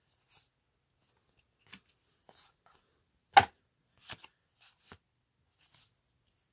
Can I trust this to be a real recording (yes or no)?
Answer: yes